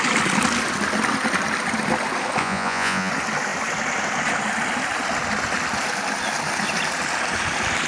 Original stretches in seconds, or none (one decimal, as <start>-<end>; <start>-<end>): 0.0-2.4; 3.1-7.9